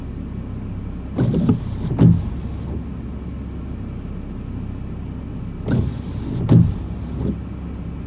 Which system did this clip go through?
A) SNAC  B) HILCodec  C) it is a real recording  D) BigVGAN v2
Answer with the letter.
C